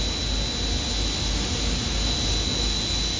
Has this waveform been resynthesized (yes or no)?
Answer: no